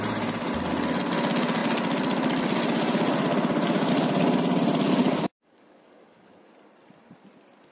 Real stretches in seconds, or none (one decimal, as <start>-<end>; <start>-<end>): 0.0-5.0; 6.3-7.7